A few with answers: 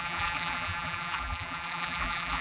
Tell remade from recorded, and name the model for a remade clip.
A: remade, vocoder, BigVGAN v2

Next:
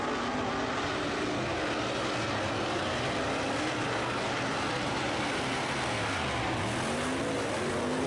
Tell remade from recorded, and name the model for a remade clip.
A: recorded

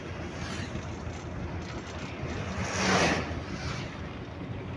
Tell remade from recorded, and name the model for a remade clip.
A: recorded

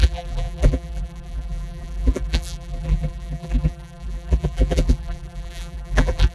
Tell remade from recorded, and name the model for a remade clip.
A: remade, vocoder, BigVGAN v2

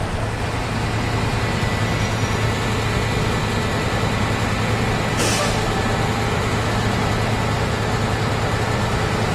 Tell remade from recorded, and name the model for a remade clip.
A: recorded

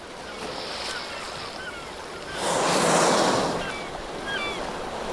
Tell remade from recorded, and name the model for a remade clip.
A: recorded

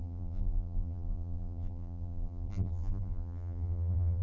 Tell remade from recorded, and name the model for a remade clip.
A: remade, vocoder, BigVGAN v2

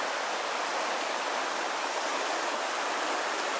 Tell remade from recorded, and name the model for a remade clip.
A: remade, vocoder, BigVGAN v2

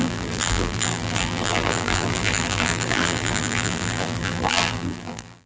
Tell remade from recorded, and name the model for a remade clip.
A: remade, vocoder, BigVGAN v2